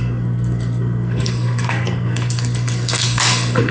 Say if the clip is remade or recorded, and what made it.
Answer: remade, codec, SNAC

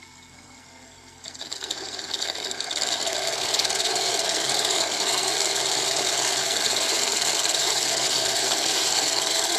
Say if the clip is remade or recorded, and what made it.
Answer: remade, codec, SNAC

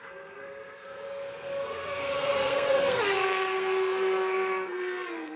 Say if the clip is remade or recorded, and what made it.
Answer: remade, codec, SNAC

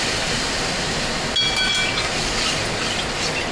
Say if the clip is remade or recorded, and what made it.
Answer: recorded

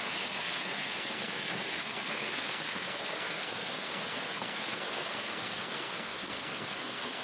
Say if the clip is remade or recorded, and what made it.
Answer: remade, codec, SNAC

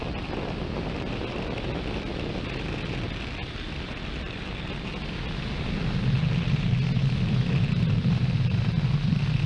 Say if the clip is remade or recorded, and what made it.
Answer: recorded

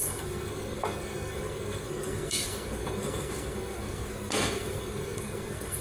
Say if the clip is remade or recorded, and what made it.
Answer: remade, codec, SNAC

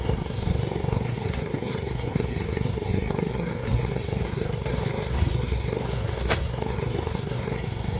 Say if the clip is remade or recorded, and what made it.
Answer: remade, codec, SNAC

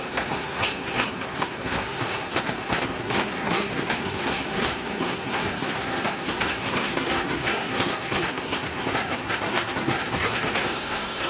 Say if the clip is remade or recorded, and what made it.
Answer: remade, codec, SNAC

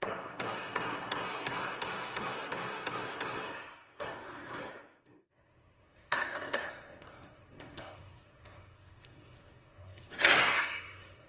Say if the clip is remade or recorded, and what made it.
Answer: remade, codec, SNAC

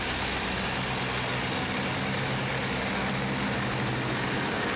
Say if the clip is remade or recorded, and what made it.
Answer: recorded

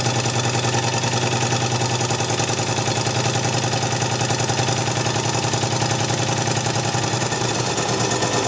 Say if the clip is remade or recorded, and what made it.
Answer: recorded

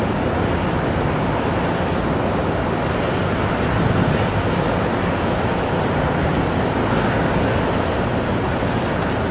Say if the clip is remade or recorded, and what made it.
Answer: recorded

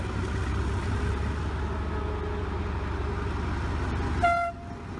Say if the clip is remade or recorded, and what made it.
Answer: recorded